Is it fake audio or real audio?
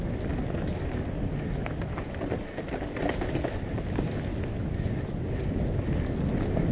real